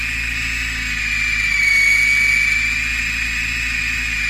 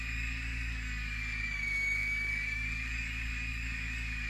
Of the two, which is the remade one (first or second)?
second